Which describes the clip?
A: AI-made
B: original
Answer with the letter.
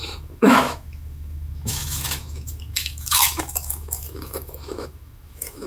A